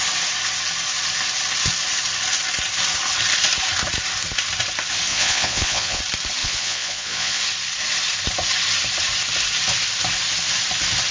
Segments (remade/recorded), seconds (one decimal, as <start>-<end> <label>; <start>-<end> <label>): 0.0-5.1 recorded; 5.1-6.0 remade; 6.0-6.4 recorded; 6.4-7.4 remade; 7.4-11.1 recorded